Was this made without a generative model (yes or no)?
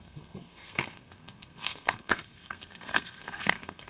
no